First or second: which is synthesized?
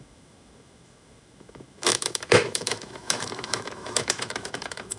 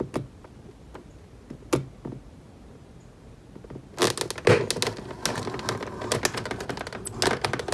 first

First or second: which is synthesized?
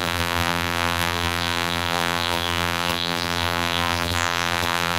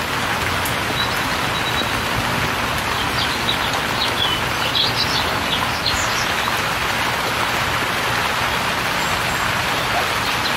first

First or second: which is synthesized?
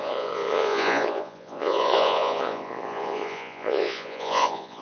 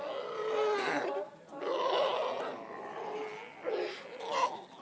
first